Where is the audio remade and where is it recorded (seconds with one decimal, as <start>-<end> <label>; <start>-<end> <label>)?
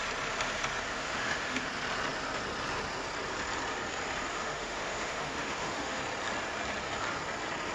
0.0-0.9 recorded; 0.9-1.7 remade; 1.7-4.3 recorded; 4.3-6.0 remade; 6.0-7.7 recorded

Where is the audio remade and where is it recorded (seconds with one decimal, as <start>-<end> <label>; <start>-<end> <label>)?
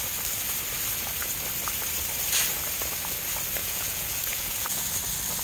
0.0-3.6 recorded; 3.6-4.9 remade; 4.9-5.4 recorded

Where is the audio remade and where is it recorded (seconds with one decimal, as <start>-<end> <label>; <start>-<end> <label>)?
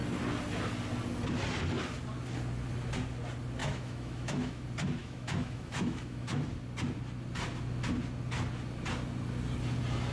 0.0-3.6 recorded; 3.6-4.6 remade; 4.6-5.0 recorded; 5.0-6.3 remade; 6.3-10.1 recorded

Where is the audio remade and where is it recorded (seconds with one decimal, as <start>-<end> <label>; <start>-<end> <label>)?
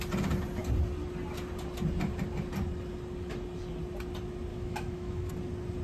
0.0-4.5 recorded; 4.5-5.3 remade; 5.3-5.8 recorded